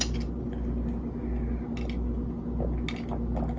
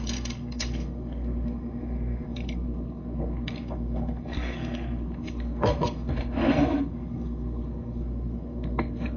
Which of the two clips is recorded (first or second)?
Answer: first